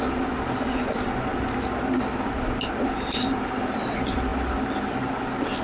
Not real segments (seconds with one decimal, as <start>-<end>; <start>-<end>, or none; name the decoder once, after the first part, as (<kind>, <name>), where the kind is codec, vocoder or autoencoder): none